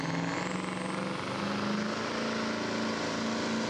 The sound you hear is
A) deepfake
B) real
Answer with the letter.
B